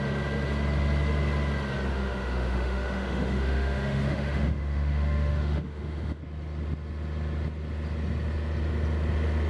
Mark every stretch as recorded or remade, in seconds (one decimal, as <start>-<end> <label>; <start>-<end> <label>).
0.0-1.9 recorded; 1.9-6.2 remade; 6.2-9.5 recorded